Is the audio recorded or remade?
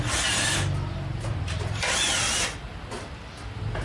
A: recorded